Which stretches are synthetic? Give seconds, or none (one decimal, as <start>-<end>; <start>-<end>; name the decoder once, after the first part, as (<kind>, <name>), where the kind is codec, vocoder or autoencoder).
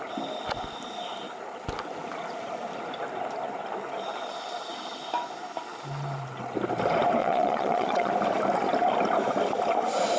7.2-8.1 (vocoder, Vocos)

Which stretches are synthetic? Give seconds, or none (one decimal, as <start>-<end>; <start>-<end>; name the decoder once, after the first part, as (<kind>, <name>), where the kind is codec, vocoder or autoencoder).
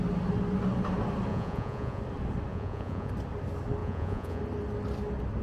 1.3-2.0 (vocoder, Vocos); 2.5-3.1; 3.8-4.4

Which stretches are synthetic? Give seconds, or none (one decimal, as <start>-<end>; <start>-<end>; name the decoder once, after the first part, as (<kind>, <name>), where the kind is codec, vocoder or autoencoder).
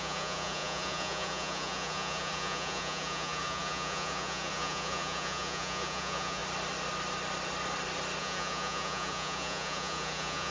0.0-6.4 (vocoder, Vocos); 8.2-10.5